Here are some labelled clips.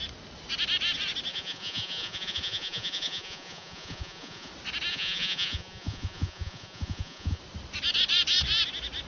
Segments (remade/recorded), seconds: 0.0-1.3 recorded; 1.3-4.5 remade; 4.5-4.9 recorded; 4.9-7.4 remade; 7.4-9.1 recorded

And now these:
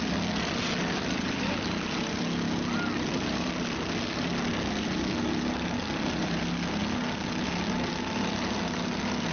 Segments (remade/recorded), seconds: 0.0-9.3 recorded

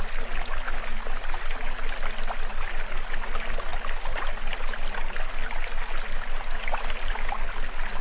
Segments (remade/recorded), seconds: 0.0-8.0 recorded

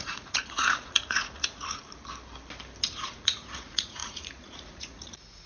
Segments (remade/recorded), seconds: 0.0-1.8 remade; 1.8-2.9 recorded; 2.9-5.5 remade

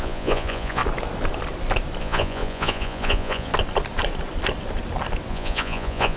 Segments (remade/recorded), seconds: 0.0-0.8 remade; 0.8-2.0 recorded; 2.0-3.5 remade; 3.5-5.3 recorded; 5.3-6.2 remade

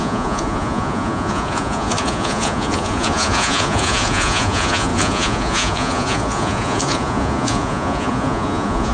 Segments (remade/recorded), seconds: 0.0-8.9 remade

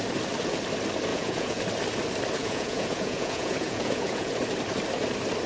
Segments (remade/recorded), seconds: 0.0-1.1 recorded; 1.1-1.6 remade; 1.6-2.4 recorded; 2.4-4.3 remade; 4.3-5.5 recorded